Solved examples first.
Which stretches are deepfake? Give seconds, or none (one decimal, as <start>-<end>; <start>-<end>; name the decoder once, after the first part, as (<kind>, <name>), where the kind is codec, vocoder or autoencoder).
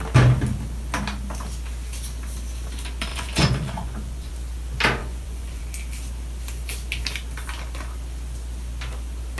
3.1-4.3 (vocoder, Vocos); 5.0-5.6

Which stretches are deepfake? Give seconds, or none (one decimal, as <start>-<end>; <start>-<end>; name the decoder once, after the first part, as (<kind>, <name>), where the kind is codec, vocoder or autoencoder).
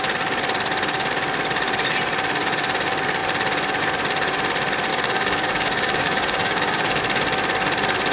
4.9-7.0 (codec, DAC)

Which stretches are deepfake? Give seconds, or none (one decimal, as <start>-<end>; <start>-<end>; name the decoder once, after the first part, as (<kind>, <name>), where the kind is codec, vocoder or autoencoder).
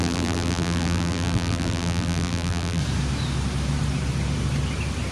0.0-2.8 (vocoder, BigVGAN v2)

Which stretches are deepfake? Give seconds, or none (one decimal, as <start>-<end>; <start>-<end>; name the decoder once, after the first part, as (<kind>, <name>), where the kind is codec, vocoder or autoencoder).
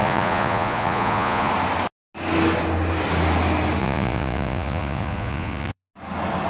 0.0-1.5 (vocoder, Vocos); 3.8-5.9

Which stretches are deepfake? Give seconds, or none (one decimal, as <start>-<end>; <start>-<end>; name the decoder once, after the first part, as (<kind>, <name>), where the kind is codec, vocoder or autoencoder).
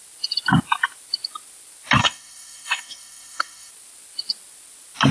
2.0-3.7 (codec, SNAC)